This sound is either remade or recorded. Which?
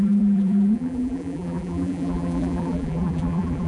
remade